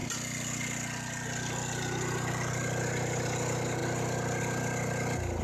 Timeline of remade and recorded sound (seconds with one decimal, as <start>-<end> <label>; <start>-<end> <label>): 0.0-5.4 recorded